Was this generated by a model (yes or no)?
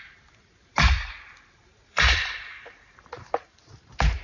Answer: yes